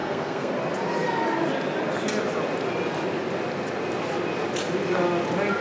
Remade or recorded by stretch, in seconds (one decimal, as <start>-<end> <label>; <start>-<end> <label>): 0.0-0.5 remade; 0.5-5.6 recorded